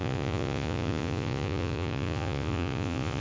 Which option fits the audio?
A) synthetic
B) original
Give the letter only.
A